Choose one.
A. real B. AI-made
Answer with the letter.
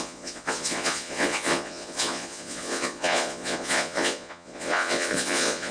B